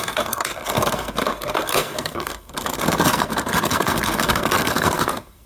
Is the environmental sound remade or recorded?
remade